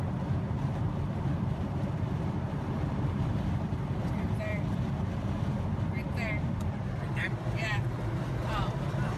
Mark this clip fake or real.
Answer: fake